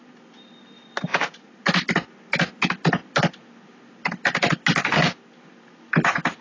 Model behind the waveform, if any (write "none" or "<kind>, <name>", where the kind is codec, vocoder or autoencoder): none